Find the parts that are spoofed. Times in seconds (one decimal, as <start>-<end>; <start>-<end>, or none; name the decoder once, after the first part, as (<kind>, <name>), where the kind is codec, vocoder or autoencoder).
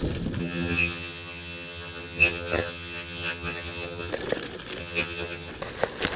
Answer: 0.4-4.1 (vocoder, HiFi-GAN); 4.8-5.5